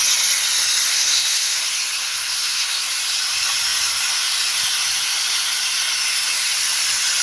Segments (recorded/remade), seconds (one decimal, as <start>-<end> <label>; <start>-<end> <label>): 0.0-0.9 recorded; 0.9-1.6 remade; 1.6-2.0 recorded; 2.0-2.8 remade; 2.8-7.2 recorded

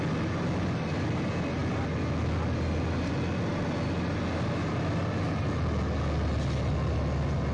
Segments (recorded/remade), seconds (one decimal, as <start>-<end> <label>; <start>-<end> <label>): 0.0-7.5 recorded

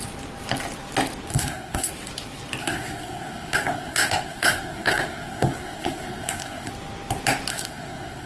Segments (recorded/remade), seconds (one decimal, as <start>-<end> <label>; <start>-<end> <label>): 0.0-1.3 recorded; 1.3-1.9 remade; 1.9-2.6 recorded; 2.6-6.7 remade; 6.7-7.5 recorded; 7.5-8.3 remade

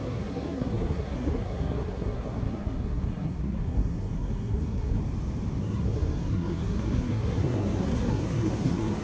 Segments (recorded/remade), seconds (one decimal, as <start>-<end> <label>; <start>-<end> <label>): 0.0-5.0 remade; 5.0-5.6 recorded; 5.6-9.0 remade

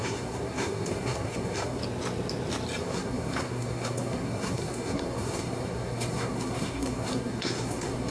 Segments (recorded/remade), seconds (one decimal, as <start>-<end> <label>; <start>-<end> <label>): 0.0-1.8 remade; 1.8-2.8 recorded; 2.8-8.1 remade

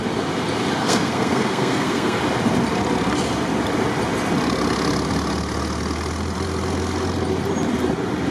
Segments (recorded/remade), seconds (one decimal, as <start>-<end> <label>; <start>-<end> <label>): 0.0-0.8 recorded; 0.8-2.2 remade; 2.2-8.3 recorded